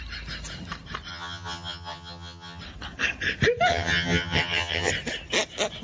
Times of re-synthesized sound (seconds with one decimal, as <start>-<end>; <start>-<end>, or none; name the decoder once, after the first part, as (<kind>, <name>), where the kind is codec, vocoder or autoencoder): 1.1-2.6 (vocoder, HiFi-GAN); 3.7-4.9